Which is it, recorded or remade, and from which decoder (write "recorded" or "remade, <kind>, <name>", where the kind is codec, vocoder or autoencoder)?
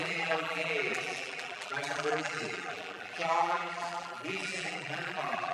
remade, vocoder, BigVGAN v2